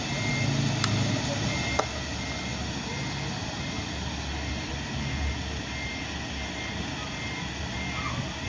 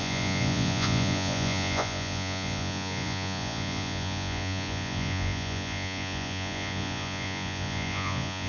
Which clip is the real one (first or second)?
first